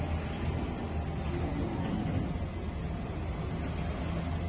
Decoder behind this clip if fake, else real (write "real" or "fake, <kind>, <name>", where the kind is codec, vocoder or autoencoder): real